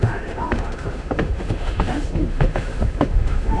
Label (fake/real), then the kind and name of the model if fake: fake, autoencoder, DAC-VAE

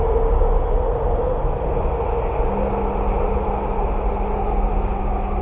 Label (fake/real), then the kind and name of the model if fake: real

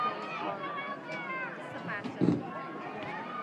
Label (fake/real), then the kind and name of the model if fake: real